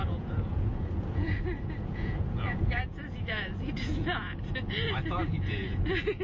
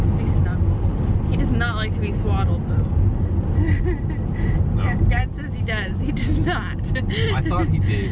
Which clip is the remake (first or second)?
first